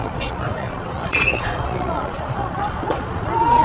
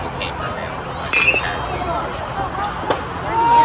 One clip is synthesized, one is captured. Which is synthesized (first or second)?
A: first